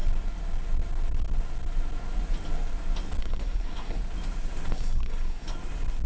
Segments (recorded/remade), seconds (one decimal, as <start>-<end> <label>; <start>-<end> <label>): 0.0-3.2 recorded; 3.2-4.0 remade; 4.0-4.7 recorded; 4.7-5.5 remade; 5.5-6.1 recorded